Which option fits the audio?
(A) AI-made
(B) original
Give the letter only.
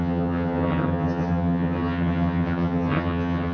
A